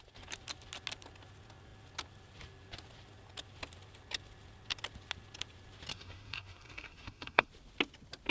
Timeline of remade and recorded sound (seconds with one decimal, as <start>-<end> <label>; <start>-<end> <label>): 0.0-5.9 recorded; 5.9-7.5 remade; 7.5-8.3 recorded